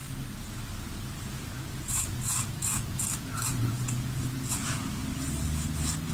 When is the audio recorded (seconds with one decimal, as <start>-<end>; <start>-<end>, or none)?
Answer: 0.0-1.2; 5.0-6.1